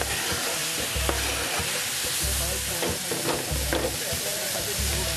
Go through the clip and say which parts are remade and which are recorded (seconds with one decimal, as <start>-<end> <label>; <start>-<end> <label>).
0.0-4.3 recorded; 4.3-5.2 remade